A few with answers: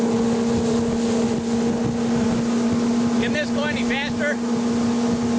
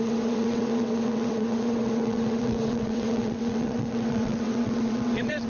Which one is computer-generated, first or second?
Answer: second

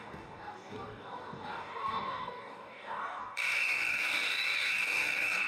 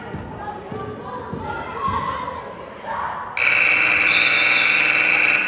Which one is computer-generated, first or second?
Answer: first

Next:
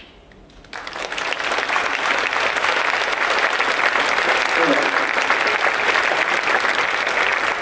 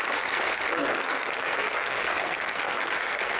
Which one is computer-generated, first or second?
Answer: second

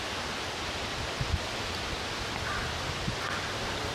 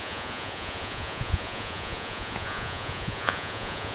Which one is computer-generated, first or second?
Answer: second